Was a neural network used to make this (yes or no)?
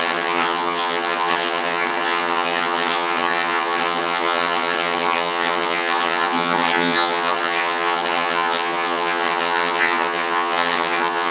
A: yes